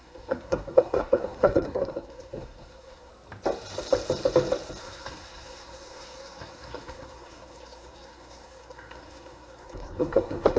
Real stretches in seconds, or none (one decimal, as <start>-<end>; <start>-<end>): 3.1-4.8